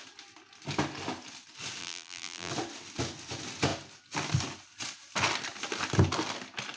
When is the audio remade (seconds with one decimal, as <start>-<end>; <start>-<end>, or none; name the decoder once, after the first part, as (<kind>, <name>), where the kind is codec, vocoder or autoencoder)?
1.8-2.5 (vocoder, BigVGAN v2)